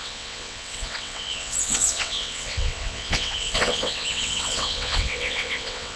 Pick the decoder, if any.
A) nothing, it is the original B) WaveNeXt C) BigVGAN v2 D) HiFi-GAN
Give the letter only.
B